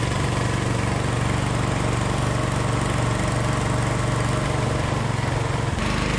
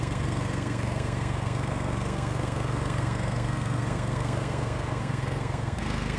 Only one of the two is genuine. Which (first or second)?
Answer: first